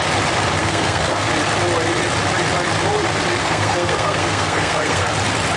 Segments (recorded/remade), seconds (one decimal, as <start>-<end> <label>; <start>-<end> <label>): 0.0-0.6 recorded; 0.6-1.3 remade; 1.3-3.4 recorded; 3.4-5.1 remade; 5.1-5.6 recorded